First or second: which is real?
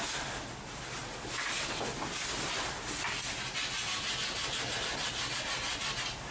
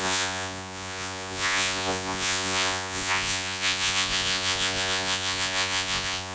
first